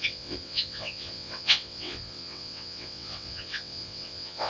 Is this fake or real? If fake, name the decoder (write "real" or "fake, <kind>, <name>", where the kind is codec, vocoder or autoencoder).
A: fake, vocoder, WaveNeXt